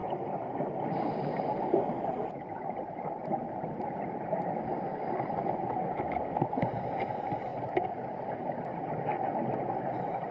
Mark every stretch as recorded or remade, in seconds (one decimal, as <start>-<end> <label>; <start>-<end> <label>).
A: 0.0-10.3 recorded